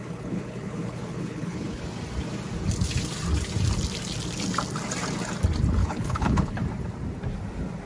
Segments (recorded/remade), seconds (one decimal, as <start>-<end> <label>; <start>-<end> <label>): 0.0-1.8 remade; 1.8-5.8 recorded; 5.8-6.6 remade; 6.6-7.9 recorded